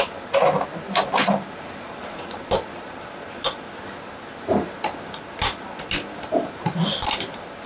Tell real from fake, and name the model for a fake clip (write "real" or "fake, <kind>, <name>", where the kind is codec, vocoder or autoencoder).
real